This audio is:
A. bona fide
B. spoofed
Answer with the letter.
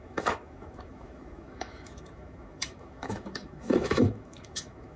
B